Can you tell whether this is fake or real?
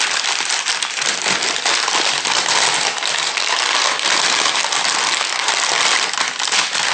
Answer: real